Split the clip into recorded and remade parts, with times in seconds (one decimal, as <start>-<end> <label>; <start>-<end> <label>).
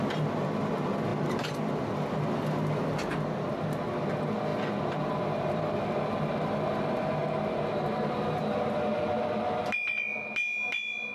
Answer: 0.0-1.1 recorded; 1.1-2.2 remade; 2.2-4.5 recorded; 4.5-5.8 remade; 5.8-11.1 recorded